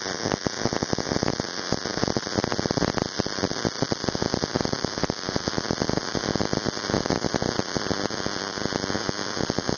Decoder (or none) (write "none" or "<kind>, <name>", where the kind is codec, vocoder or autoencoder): none